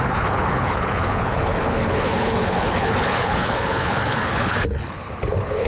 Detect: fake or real fake